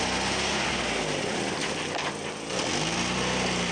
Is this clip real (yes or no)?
yes